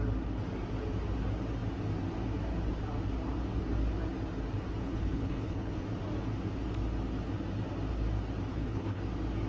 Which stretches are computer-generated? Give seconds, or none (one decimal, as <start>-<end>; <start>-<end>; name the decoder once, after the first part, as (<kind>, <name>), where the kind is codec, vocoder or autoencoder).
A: 4.8-5.8 (codec, HILCodec); 8.5-9.0